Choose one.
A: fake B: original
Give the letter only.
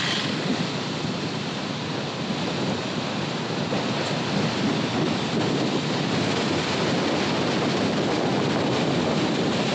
B